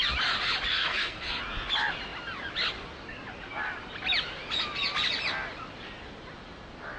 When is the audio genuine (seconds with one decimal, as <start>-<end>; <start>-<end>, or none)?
0.0-0.7; 1.4-7.0

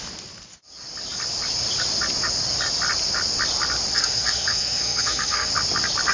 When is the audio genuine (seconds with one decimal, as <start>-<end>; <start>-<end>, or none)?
0.0-3.9; 5.5-6.1